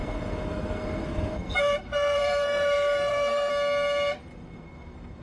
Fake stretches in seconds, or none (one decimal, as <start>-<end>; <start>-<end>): 0.0-3.5; 4.2-5.2